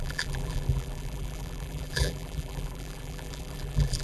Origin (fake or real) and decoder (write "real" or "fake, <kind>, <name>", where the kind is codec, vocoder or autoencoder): fake, vocoder, BigVGAN v2